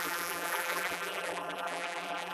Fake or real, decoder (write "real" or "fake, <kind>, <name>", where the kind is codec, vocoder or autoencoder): fake, vocoder, BigVGAN v2